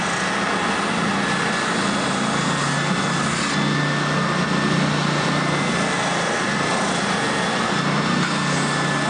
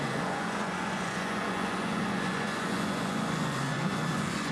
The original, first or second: first